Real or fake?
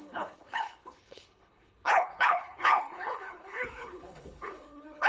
fake